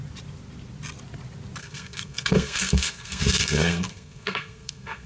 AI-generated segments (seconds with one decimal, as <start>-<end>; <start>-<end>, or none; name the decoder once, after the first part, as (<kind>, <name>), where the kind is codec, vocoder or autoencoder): 1.6-5.1 (codec, SNAC)